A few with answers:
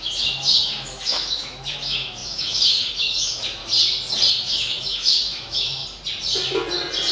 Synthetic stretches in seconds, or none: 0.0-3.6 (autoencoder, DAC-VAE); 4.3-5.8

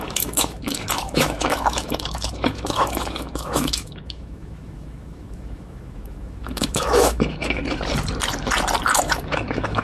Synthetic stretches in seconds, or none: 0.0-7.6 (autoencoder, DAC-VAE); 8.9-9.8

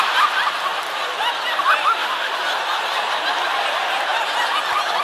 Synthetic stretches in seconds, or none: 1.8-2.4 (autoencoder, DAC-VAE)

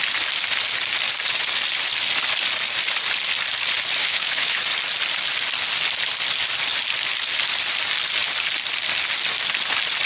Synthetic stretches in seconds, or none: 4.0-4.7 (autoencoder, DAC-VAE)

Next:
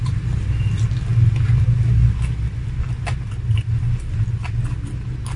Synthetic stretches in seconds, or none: none

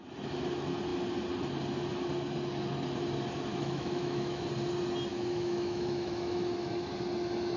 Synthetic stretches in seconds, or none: 3.5-4.5 (autoencoder, DAC-VAE); 5.1-6.9